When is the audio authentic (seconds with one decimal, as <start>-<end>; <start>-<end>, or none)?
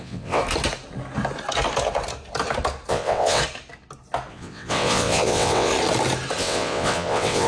0.4-2.9; 3.4-4.3; 5.7-6.4